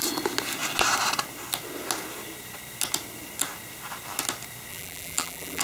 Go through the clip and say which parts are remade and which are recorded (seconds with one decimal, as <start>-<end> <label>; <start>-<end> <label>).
0.0-4.7 recorded; 4.7-5.6 remade